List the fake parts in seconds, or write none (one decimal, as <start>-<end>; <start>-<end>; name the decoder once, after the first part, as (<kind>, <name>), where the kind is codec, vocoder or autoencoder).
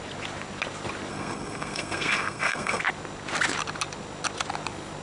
1.1-2.8 (codec, SNAC)